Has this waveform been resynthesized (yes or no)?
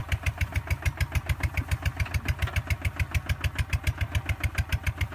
no